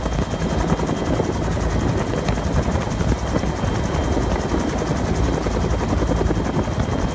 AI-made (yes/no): no